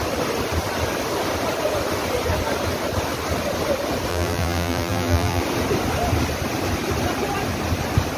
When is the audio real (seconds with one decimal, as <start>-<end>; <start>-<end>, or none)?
0.0-4.1; 5.4-8.2